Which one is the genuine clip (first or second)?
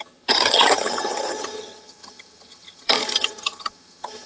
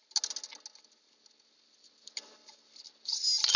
second